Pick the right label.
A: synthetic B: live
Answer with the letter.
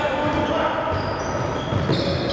B